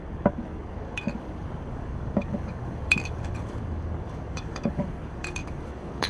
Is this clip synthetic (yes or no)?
yes